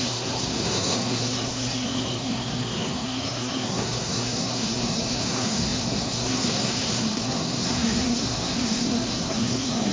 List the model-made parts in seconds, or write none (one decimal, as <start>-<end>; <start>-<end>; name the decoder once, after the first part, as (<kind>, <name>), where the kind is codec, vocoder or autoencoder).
0.0-9.9 (codec, SNAC)